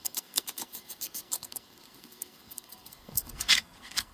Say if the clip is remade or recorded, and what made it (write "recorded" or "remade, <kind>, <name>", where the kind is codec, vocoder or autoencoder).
remade, codec, SNAC